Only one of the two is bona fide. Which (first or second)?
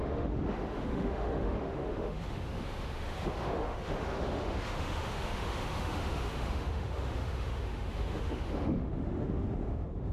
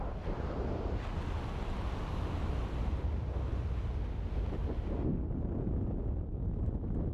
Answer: second